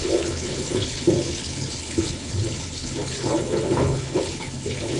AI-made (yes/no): yes